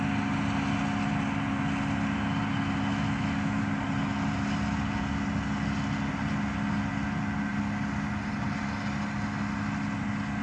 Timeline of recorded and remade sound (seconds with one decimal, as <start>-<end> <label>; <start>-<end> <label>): 0.0-2.9 recorded; 2.9-3.6 remade; 3.6-10.4 recorded